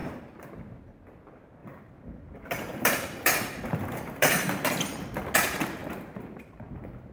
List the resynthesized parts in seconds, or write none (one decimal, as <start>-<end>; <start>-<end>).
0.0-0.5; 1.6-4.7; 5.8-7.1